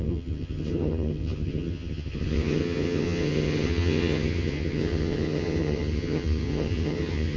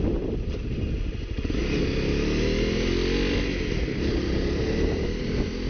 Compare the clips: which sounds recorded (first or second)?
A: second